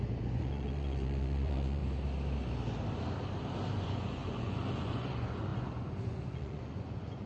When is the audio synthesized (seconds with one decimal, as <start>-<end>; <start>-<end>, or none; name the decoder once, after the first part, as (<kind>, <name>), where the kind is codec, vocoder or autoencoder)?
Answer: 0.0-1.8 (vocoder, Vocos); 3.8-7.3